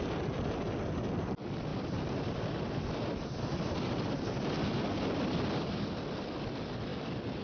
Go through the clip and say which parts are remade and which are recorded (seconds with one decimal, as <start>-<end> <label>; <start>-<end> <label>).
0.0-7.4 recorded